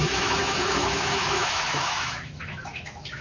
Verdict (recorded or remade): remade